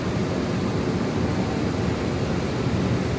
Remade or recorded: recorded